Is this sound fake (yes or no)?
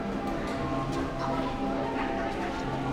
no